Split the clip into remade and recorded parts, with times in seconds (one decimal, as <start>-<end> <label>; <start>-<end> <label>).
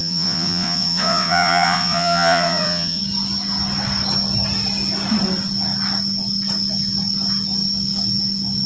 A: 0.0-3.0 remade; 3.0-8.7 recorded